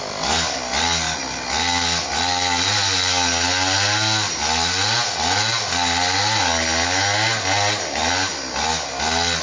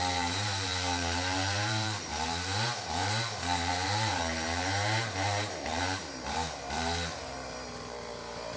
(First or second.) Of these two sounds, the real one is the first